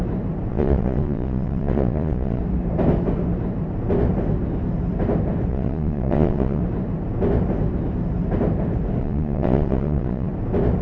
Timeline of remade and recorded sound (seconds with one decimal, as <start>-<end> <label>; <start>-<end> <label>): 0.0-0.5 recorded; 0.5-2.4 remade; 2.4-5.5 recorded; 5.5-6.6 remade; 6.6-9.0 recorded; 9.0-10.3 remade; 10.3-10.8 recorded